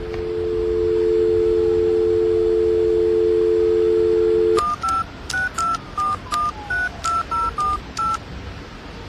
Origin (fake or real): real